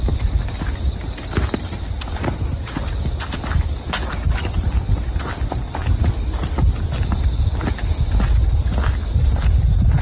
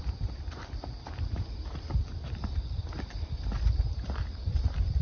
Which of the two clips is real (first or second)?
first